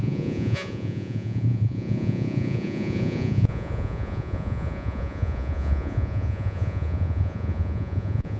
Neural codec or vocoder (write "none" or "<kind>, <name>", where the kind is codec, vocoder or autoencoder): vocoder, Vocos